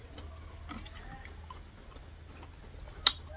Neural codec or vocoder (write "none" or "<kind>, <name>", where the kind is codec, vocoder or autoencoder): none